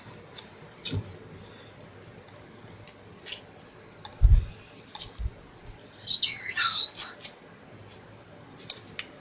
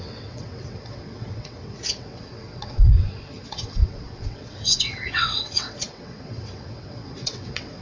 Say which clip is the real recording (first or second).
first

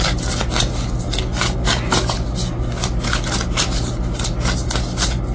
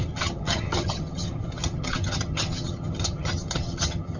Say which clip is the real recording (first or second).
first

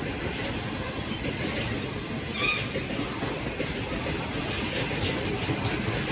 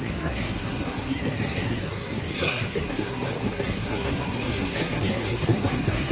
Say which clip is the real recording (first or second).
first